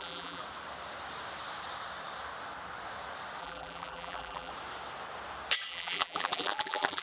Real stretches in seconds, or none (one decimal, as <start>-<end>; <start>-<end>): 0.4-3.4; 4.5-5.7